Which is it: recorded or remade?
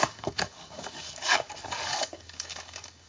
remade